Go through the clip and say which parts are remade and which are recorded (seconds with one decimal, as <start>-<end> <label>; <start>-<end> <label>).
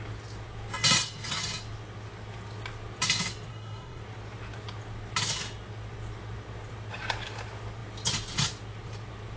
0.0-3.5 recorded; 3.5-4.0 remade; 4.0-9.4 recorded